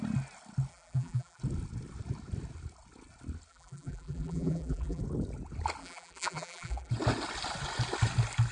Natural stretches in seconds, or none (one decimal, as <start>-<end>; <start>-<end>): 0.0-0.7; 1.4-3.5; 5.0-5.8; 6.9-8.5